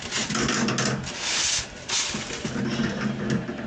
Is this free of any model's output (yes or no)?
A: yes